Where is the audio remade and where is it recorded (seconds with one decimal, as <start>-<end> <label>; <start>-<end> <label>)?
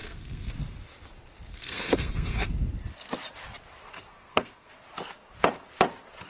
0.0-0.5 remade; 0.5-1.5 recorded; 1.5-2.5 remade; 2.5-4.1 recorded; 4.1-4.7 remade; 4.7-6.3 recorded